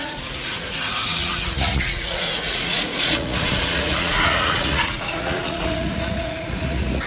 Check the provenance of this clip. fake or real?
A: fake